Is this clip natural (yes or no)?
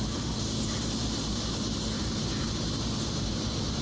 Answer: no